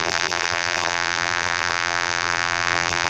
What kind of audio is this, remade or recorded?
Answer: remade